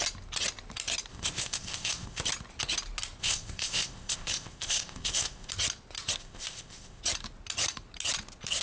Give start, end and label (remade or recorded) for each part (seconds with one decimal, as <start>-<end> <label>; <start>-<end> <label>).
0.0-1.1 recorded; 1.1-2.2 remade; 2.2-3.2 recorded; 3.2-5.5 remade; 5.5-6.2 recorded; 6.2-7.0 remade; 7.0-8.6 recorded

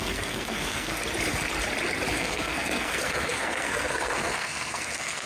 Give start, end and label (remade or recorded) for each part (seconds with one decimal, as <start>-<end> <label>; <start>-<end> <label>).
0.0-1.0 remade; 1.0-2.1 recorded; 2.1-5.3 remade